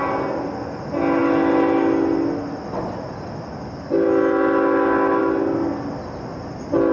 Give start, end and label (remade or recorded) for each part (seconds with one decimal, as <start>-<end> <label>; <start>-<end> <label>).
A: 0.0-6.9 recorded